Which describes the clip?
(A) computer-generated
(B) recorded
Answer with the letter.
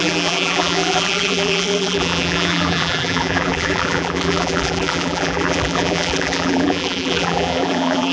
A